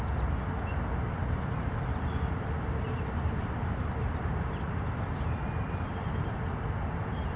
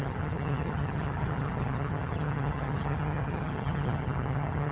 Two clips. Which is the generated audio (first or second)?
second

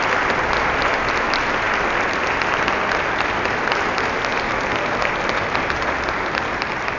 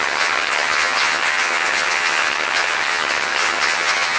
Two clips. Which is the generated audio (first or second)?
second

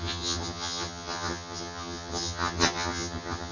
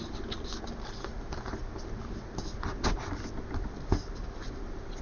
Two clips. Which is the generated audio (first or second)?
first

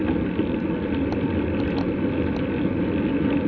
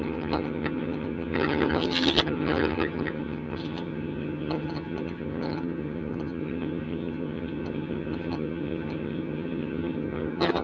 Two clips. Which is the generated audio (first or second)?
second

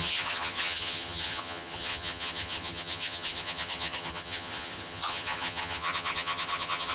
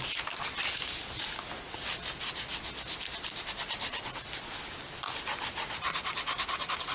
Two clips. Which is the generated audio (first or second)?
first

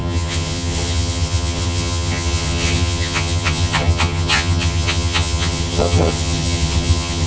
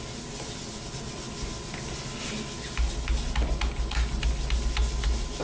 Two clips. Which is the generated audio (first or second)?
first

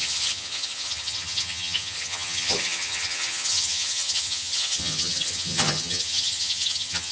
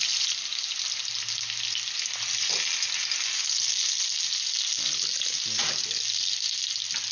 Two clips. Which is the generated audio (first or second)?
first